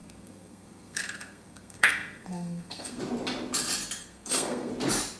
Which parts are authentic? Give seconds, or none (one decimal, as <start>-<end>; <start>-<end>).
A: 3.0-4.0; 4.7-5.2